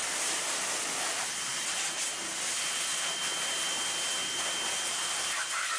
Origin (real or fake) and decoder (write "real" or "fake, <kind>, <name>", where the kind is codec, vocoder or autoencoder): fake, vocoder, BigVGAN v2